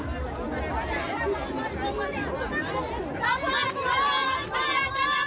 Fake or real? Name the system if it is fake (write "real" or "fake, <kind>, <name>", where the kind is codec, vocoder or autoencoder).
real